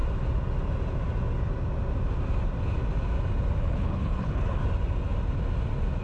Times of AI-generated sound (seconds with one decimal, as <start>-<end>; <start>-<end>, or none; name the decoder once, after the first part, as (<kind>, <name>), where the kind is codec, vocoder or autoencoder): 3.6-4.6 (codec, HILCodec)